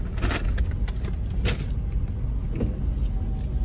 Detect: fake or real real